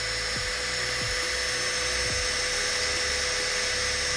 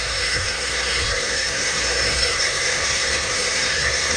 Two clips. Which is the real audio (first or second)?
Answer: first